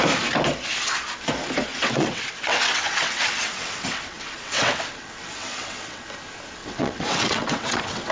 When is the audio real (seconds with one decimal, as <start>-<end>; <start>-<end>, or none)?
0.0-1.7; 6.0-6.6